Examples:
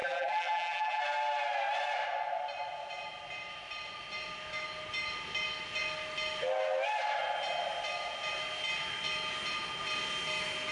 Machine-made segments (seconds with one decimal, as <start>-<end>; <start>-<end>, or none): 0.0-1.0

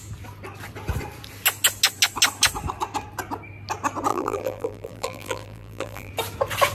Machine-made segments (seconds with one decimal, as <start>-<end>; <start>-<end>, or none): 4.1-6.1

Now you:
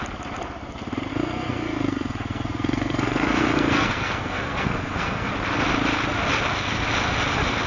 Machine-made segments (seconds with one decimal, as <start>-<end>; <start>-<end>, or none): 1.1-5.3

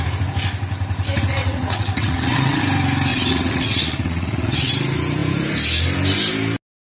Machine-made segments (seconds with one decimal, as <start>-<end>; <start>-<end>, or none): 1.4-2.6; 3.1-4.7

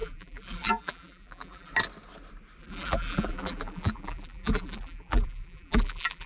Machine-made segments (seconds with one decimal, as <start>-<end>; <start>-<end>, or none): 0.0-1.7; 2.6-6.3

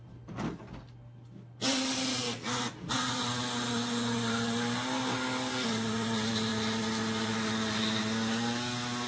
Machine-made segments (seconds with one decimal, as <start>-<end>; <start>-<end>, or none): none